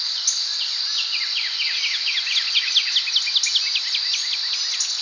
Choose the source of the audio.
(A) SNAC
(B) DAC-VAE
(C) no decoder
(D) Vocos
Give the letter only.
C